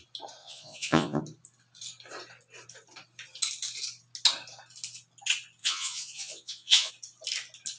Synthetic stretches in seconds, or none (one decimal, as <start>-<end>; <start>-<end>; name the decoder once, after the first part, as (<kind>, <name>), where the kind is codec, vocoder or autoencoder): 0.4-1.2 (vocoder, Vocos); 5.6-6.9